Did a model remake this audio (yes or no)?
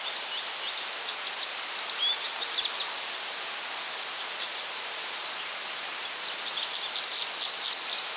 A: no